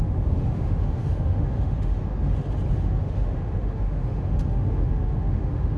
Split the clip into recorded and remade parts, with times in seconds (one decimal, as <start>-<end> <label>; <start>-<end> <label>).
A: 0.0-2.1 remade; 2.1-2.7 recorded; 2.7-5.8 remade